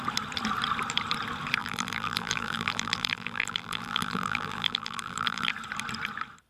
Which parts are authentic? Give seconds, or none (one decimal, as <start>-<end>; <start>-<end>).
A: 0.0-1.6; 5.5-6.5